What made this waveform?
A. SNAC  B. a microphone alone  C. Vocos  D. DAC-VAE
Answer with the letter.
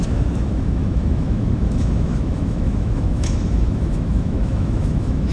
D